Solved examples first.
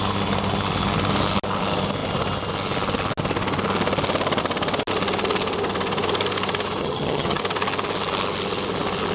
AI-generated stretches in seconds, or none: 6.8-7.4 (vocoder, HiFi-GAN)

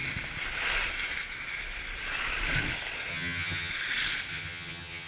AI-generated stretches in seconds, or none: 3.1-3.7 (vocoder, HiFi-GAN); 4.3-5.1